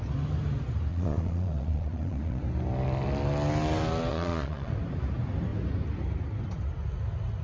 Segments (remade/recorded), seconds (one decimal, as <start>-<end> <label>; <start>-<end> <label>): 0.0-0.9 recorded; 0.9-2.4 remade; 2.4-4.1 recorded; 4.1-4.7 remade; 4.7-7.4 recorded

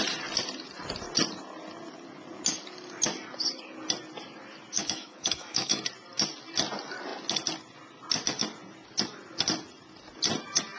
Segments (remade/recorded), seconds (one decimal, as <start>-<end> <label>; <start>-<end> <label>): 0.0-4.8 recorded; 4.8-5.8 remade; 5.8-10.8 recorded

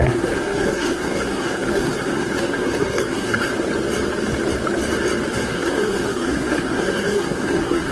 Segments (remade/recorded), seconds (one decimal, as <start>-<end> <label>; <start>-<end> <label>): 0.0-3.5 remade; 3.5-5.3 recorded; 5.3-7.9 remade

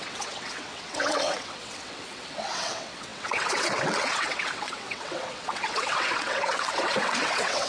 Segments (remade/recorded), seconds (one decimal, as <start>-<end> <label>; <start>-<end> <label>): 0.0-7.7 remade

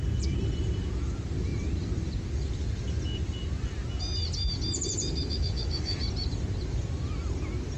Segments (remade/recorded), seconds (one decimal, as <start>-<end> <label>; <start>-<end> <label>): 0.0-5.2 recorded; 5.2-6.0 remade; 6.0-7.8 recorded

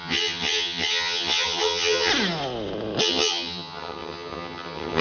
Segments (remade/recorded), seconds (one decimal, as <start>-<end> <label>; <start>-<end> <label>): 0.0-2.1 remade; 2.1-3.0 recorded; 3.0-5.0 remade

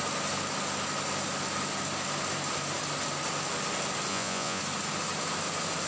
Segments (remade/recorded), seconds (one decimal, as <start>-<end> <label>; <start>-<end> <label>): 0.0-4.1 recorded; 4.1-4.6 remade; 4.6-5.9 recorded

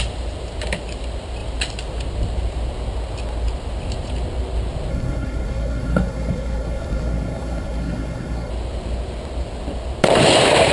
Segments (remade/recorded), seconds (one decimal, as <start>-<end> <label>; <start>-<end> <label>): 0.0-4.9 recorded; 4.9-8.5 remade; 8.5-10.7 recorded